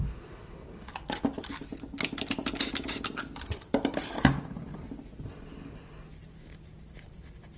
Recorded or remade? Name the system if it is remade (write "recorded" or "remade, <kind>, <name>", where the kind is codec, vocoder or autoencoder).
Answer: recorded